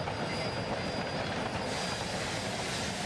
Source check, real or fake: real